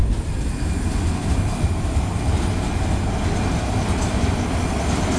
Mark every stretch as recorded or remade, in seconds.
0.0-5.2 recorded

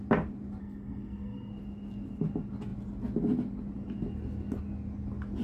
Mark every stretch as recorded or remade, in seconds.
0.0-0.6 recorded; 0.6-1.5 remade; 1.5-5.4 recorded

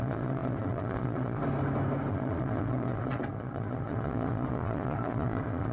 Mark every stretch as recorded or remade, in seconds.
0.0-1.4 remade; 1.4-2.1 recorded; 2.1-5.7 remade

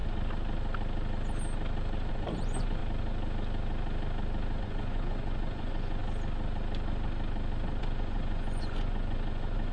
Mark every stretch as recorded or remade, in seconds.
0.0-2.1 recorded; 2.1-2.8 remade; 2.8-4.6 recorded; 4.6-6.0 remade; 6.0-7.8 recorded; 7.8-9.7 remade

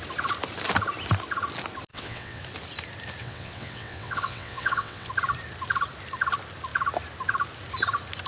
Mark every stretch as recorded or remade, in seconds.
0.0-1.9 recorded; 1.9-2.4 remade; 2.4-3.2 recorded; 3.2-5.1 remade; 5.1-8.3 recorded